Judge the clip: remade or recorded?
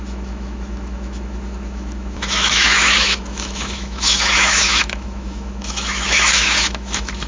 remade